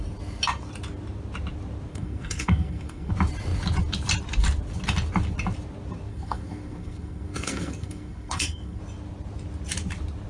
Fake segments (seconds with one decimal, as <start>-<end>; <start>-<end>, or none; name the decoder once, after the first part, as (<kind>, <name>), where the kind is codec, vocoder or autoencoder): 1.9-3.1 (codec, SNAC); 6.1-8.8